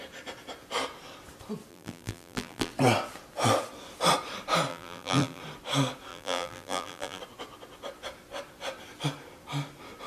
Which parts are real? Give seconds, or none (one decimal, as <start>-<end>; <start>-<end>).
0.0-1.7; 2.7-4.7; 5.4-6.1; 7.2-10.1